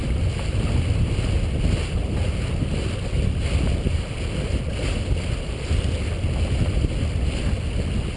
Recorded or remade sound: recorded